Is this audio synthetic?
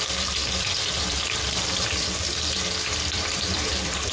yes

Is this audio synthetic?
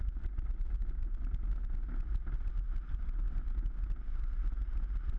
no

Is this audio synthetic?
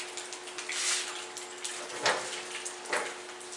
no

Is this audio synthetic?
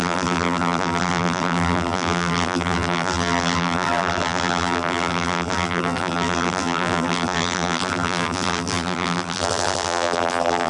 yes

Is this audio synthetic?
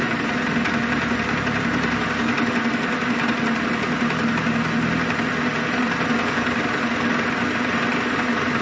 no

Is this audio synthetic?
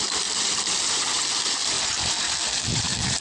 yes